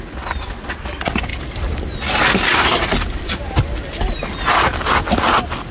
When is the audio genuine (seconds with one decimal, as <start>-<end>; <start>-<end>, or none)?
0.0-5.7